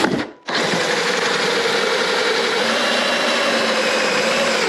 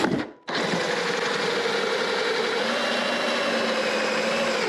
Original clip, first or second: second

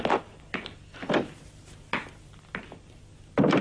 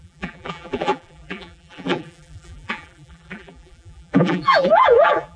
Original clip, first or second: first